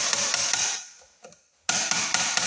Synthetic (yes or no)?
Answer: no